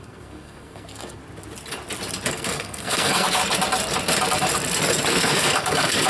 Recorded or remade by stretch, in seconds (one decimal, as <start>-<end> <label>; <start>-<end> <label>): 0.0-1.2 remade; 1.2-2.3 recorded; 2.3-3.4 remade; 3.4-5.1 recorded; 5.1-6.1 remade